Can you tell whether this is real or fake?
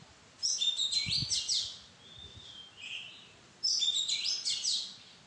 real